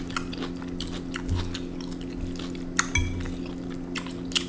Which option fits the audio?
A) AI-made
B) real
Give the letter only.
B